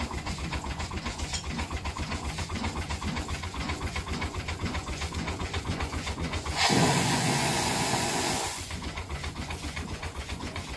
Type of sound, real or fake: fake